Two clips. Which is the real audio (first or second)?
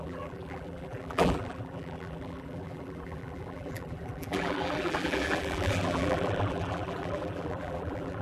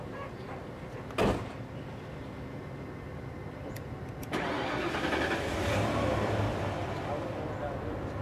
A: second